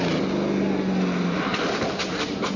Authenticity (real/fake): real